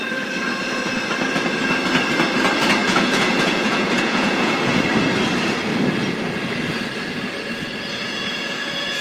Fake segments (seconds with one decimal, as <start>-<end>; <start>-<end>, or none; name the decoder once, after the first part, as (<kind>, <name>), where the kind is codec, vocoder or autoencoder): 2.8-4.8 (vocoder, Vocos); 8.0-9.0